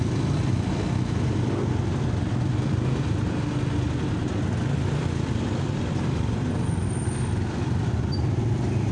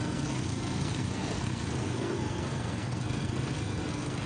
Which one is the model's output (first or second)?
second